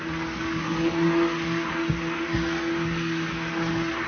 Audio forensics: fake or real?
real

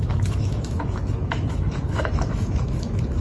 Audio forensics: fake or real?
fake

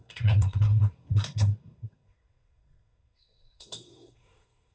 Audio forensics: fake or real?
fake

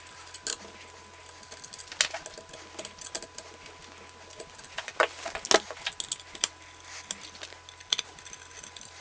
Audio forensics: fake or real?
real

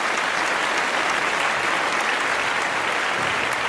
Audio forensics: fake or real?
real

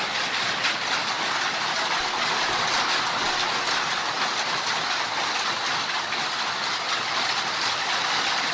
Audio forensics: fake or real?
real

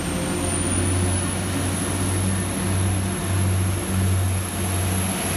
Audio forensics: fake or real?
real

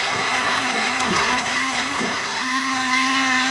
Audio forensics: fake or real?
fake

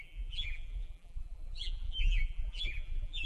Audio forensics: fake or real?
fake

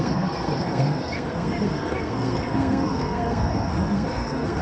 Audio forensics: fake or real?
fake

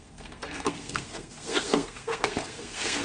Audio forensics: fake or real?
fake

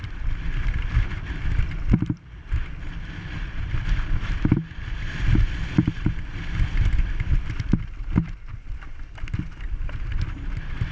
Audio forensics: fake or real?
fake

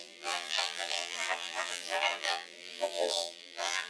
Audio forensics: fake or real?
fake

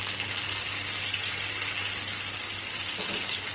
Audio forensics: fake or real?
real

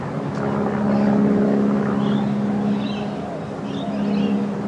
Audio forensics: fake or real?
real